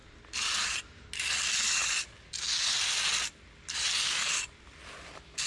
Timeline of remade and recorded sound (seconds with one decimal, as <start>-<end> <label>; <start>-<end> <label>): 0.0-1.1 remade; 1.1-5.5 recorded